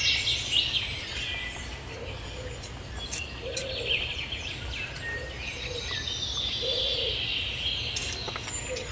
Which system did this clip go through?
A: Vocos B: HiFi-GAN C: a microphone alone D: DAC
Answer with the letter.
C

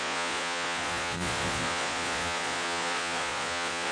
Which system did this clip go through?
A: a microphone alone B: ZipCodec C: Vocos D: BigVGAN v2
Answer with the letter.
C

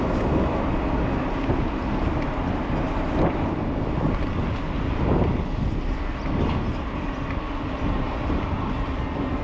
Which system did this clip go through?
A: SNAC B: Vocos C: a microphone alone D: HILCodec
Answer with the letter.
C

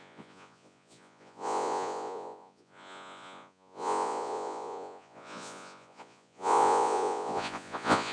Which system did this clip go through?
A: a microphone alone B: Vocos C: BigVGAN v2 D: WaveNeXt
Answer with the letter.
B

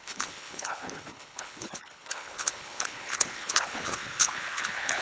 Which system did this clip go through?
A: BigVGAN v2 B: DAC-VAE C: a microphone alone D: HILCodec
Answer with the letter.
D